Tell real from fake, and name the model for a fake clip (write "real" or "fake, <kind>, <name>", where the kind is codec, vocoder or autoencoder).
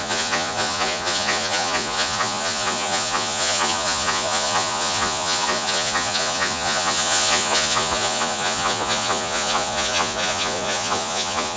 fake, vocoder, Vocos